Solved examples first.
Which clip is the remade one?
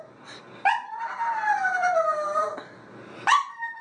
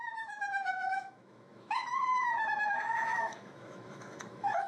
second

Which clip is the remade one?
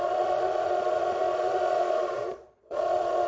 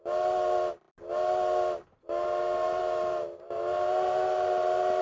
first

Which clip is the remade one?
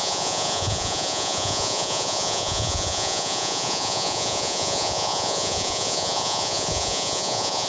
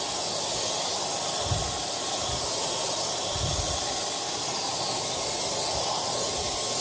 first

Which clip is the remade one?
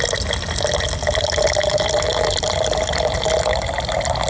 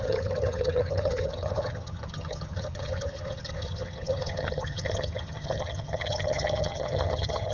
second